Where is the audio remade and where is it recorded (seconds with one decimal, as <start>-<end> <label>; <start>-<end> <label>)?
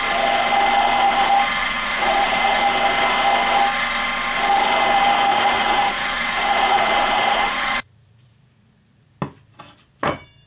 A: 0.0-1.6 recorded; 1.6-2.6 remade; 2.6-5.3 recorded; 5.3-9.1 remade; 9.1-10.5 recorded